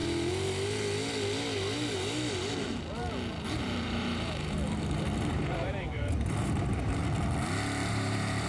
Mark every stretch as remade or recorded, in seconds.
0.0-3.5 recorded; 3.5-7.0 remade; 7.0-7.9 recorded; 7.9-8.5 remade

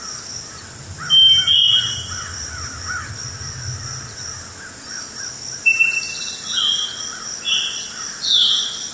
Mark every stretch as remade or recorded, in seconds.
0.0-8.9 recorded

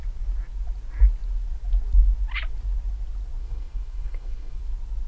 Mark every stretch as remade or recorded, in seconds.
0.0-3.4 recorded; 3.4-4.6 remade; 4.6-5.1 recorded